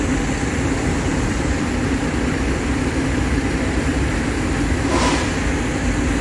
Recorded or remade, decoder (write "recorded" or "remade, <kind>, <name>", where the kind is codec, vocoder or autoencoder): recorded